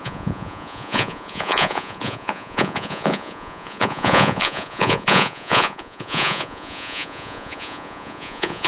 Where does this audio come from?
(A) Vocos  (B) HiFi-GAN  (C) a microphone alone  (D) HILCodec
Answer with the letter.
A